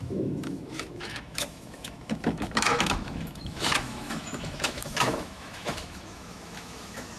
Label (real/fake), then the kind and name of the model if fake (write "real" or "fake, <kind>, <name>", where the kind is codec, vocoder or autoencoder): fake, autoencoder, DAC-VAE